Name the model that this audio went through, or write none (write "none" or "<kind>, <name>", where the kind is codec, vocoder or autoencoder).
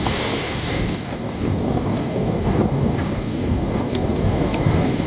codec, DAC